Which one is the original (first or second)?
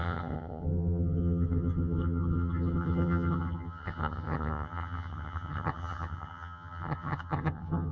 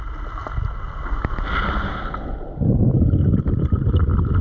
second